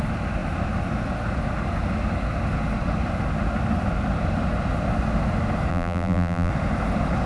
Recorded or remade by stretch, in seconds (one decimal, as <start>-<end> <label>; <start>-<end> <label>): 0.0-5.7 recorded; 5.7-6.5 remade; 6.5-7.3 recorded